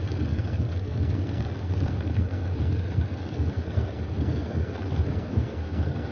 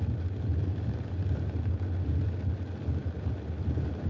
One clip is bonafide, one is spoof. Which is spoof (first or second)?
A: first